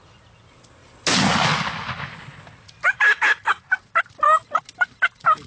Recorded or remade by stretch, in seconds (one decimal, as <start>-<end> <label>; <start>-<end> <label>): 0.0-5.5 recorded